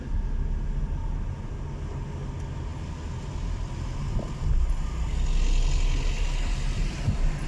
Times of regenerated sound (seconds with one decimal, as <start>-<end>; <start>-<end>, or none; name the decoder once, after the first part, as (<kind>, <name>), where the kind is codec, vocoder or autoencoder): none